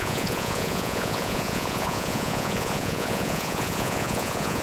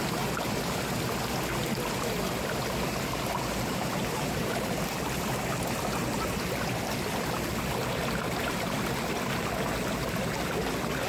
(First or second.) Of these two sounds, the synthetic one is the first